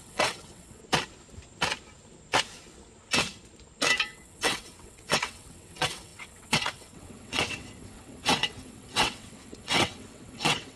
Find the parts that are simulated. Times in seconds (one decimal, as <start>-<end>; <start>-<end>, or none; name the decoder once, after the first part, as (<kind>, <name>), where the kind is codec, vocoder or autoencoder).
0.0-0.8 (vocoder, WaveNeXt); 4.0-10.8